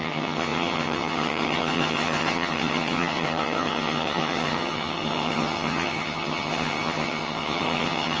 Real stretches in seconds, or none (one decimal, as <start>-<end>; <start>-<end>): none